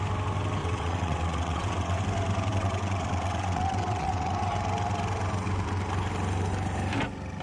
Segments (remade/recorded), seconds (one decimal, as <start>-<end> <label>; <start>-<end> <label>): 0.0-0.6 recorded; 0.6-2.0 remade; 2.0-2.5 recorded; 2.5-4.3 remade; 4.3-7.4 recorded